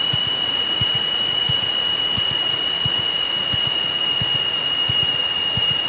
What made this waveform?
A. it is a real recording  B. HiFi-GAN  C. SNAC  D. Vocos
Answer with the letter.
D